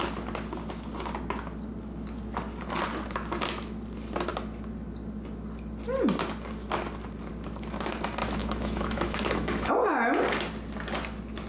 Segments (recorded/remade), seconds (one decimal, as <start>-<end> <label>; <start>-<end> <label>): 0.0-8.2 recorded; 8.2-9.7 remade; 9.7-11.5 recorded

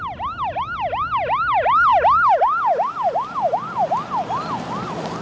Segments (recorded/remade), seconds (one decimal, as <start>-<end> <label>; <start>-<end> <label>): 0.0-5.2 recorded

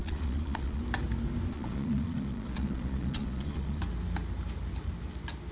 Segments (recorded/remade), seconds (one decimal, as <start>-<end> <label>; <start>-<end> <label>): 0.0-0.8 remade; 0.8-1.5 recorded; 1.5-3.8 remade; 3.8-5.5 recorded

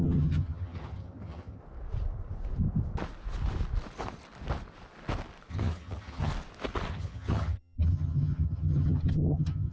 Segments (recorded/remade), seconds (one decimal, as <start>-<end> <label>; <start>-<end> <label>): 0.0-1.6 remade; 1.6-5.5 recorded; 5.5-6.3 remade; 6.3-6.9 recorded; 6.9-9.7 remade

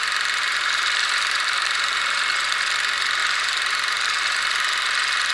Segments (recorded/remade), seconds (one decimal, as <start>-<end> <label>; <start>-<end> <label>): 0.0-0.4 recorded; 0.4-2.3 remade; 2.3-3.2 recorded; 3.2-4.4 remade; 4.4-5.3 recorded

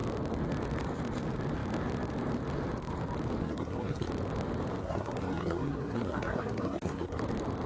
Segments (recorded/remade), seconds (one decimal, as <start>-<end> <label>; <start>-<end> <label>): 0.0-3.4 recorded; 3.4-4.1 remade; 4.1-4.8 recorded; 4.8-7.2 remade; 7.2-7.7 recorded

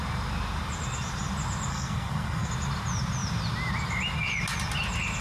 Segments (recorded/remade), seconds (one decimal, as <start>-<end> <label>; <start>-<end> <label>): 0.0-1.7 recorded; 1.7-2.5 remade; 2.5-5.2 recorded

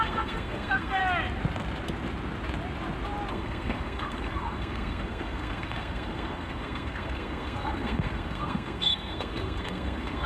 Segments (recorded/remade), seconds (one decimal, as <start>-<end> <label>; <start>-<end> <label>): 0.0-1.0 remade; 1.0-3.3 recorded; 3.3-10.3 remade